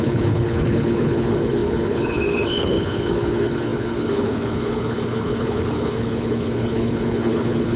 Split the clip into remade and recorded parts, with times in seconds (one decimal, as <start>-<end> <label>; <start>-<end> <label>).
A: 0.0-7.8 remade